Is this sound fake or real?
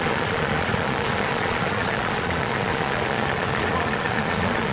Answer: fake